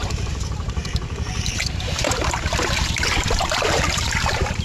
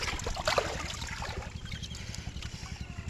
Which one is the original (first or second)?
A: second